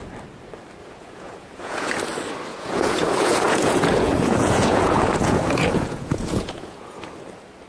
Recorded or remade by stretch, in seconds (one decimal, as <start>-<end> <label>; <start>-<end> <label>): 0.0-0.8 recorded; 0.8-1.9 remade; 1.9-2.5 recorded; 2.5-7.1 remade; 7.1-7.7 recorded